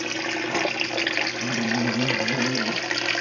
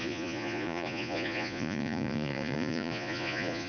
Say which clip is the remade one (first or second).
second